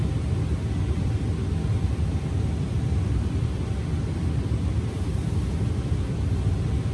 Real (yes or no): yes